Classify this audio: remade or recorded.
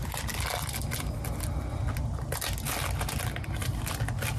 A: recorded